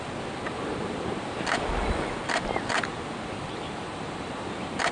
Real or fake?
real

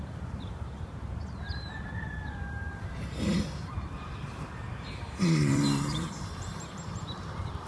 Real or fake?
fake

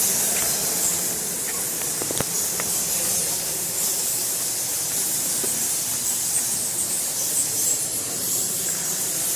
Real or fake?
fake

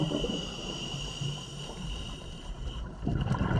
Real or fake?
fake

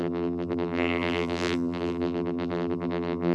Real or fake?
fake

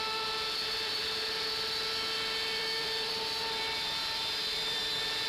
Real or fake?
fake